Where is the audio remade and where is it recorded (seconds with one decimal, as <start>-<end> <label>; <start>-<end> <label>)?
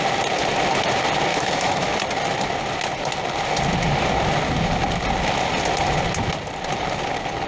0.0-1.3 recorded; 1.3-1.9 remade; 1.9-7.5 recorded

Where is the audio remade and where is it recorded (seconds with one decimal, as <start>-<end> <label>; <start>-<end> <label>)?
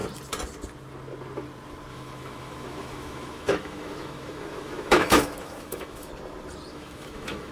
0.0-1.9 recorded; 1.9-6.1 remade; 6.1-6.7 recorded; 6.7-7.5 remade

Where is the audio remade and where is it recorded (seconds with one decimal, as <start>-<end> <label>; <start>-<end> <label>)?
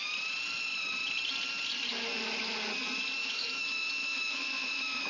0.0-3.2 recorded; 3.2-5.1 remade